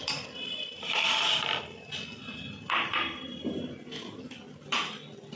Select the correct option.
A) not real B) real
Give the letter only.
B